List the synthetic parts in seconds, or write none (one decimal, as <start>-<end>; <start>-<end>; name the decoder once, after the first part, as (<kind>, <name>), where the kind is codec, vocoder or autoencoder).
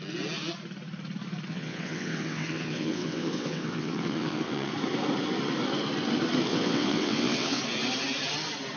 1.5-4.7 (vocoder, WaveNeXt); 6.5-7.6